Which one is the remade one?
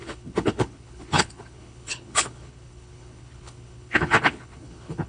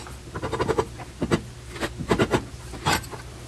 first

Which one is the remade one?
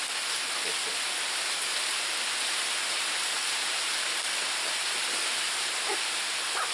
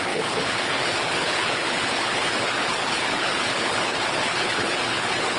second